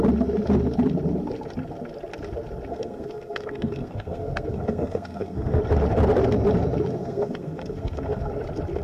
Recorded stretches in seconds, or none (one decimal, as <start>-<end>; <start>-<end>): 0.0-2.7; 5.6-7.0; 8.3-8.8